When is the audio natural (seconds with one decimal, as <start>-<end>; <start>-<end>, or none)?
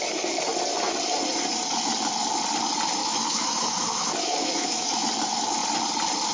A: 0.0-3.0; 5.0-6.3